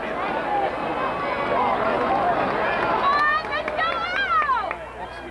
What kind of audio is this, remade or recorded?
recorded